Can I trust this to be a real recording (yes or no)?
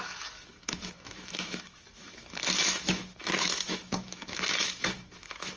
no